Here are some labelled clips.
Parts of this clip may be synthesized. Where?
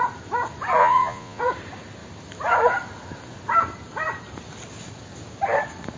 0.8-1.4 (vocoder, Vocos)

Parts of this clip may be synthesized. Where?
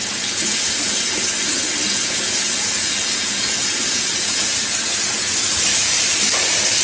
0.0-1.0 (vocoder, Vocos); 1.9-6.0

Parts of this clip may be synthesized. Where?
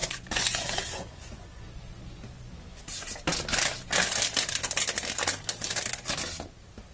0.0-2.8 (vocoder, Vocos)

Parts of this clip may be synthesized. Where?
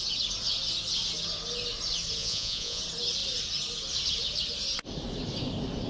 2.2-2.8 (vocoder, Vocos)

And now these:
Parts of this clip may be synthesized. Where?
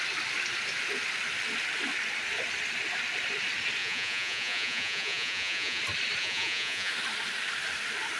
3.8-5.8 (vocoder, Vocos); 6.2-6.9